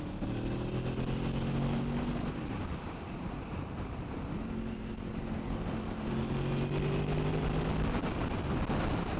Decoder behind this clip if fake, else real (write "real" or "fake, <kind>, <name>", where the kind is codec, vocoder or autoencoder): real